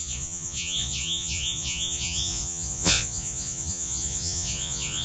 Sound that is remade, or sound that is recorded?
remade